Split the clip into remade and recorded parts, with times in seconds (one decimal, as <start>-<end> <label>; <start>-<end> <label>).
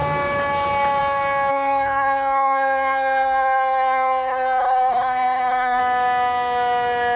0.0-1.5 recorded; 1.5-5.8 remade; 5.8-7.2 recorded